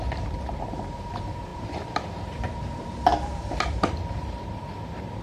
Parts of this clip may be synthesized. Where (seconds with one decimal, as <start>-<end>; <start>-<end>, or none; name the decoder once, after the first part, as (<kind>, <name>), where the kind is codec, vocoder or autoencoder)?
1.5-4.6 (vocoder, BigVGAN v2)

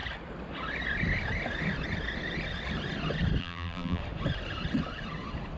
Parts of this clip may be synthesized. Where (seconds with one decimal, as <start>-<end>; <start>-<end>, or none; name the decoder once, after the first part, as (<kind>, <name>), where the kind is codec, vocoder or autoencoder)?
3.4-4.0 (vocoder, BigVGAN v2)

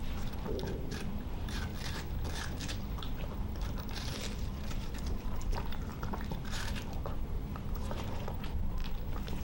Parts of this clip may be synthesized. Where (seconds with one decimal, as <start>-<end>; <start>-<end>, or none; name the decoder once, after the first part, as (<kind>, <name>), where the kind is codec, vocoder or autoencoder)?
0.0-1.7 (vocoder, BigVGAN v2); 3.2-8.8

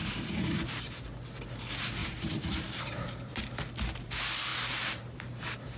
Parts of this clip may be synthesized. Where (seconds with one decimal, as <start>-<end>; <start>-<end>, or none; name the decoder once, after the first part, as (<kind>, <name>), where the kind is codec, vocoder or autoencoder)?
0.0-0.8 (vocoder, BigVGAN v2); 2.0-3.4

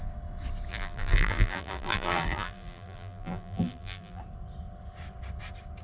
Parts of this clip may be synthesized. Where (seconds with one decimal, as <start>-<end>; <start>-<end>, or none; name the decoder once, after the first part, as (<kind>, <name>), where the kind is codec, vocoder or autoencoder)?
0.7-4.2 (vocoder, BigVGAN v2)

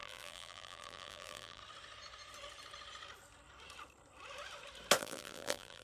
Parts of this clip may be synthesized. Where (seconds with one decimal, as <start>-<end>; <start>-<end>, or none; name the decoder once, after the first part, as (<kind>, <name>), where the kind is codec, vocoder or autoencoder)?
0.0-1.6 (vocoder, BigVGAN v2); 5.0-5.8

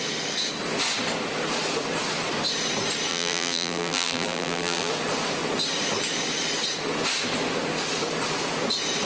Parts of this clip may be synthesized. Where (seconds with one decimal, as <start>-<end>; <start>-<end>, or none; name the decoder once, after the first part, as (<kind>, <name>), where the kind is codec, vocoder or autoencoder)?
3.1-4.9 (vocoder, BigVGAN v2)

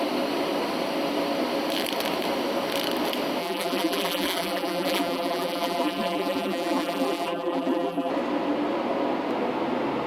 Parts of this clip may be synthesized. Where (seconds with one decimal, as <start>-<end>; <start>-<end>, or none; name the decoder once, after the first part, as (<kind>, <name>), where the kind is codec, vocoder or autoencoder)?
3.4-8.1 (vocoder, BigVGAN v2)